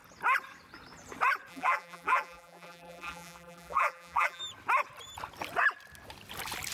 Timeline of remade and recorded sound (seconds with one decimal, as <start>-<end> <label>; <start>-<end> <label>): 0.0-1.5 recorded; 1.5-4.4 remade; 4.4-6.7 recorded